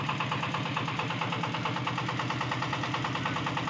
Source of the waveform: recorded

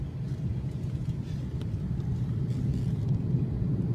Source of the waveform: recorded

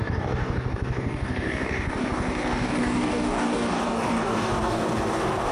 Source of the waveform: remade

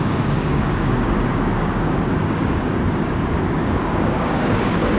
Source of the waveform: remade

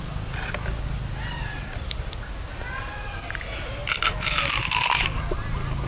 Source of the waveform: recorded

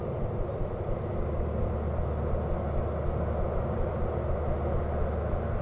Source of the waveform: recorded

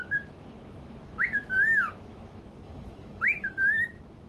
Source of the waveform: remade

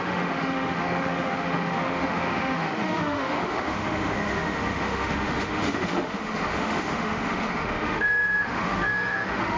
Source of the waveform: remade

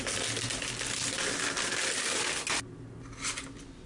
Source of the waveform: recorded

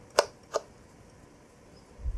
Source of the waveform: recorded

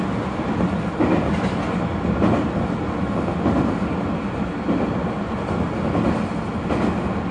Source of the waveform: recorded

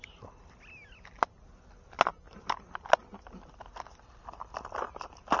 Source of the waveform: recorded